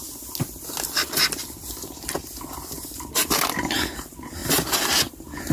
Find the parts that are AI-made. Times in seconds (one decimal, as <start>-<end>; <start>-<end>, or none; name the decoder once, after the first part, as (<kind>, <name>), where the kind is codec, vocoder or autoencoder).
none